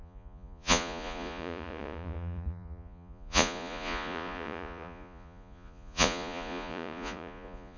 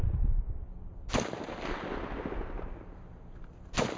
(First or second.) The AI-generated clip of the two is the first